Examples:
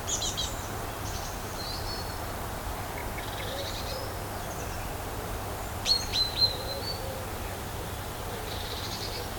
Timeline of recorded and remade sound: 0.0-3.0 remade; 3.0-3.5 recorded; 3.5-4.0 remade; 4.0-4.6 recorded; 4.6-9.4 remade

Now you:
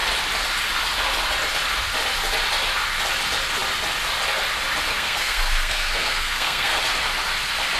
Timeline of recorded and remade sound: 0.0-4.9 recorded; 4.9-6.8 remade; 6.8-7.8 recorded

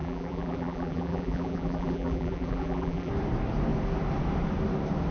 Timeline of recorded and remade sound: 0.0-3.1 remade; 3.1-5.1 recorded

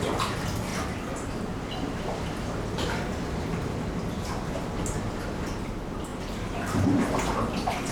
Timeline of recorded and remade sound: 0.0-7.9 recorded

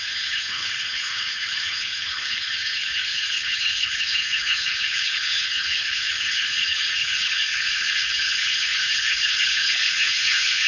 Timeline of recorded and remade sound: 0.0-10.7 remade

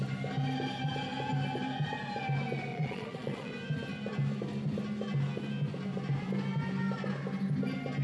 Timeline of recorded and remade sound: 0.0-2.7 recorded; 2.7-3.5 remade; 3.5-8.0 recorded